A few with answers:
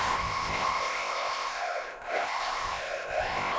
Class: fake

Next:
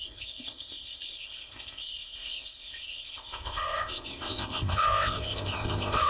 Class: fake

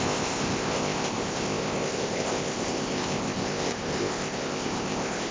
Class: fake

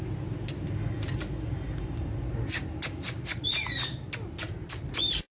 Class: real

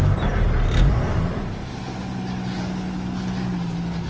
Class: real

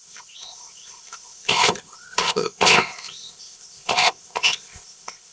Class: fake